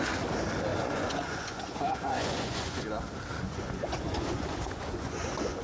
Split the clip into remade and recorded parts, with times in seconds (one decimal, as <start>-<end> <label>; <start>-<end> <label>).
0.0-0.7 recorded; 0.7-2.8 remade; 2.8-3.3 recorded; 3.3-5.6 remade